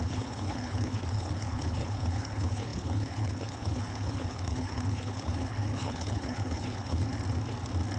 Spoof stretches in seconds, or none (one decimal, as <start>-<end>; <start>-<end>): 0.0-7.1